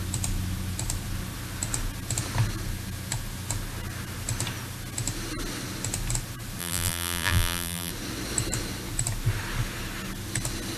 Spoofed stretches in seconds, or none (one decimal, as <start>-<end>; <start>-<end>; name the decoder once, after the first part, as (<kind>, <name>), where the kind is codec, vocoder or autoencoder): 6.6-7.9 (vocoder, BigVGAN v2)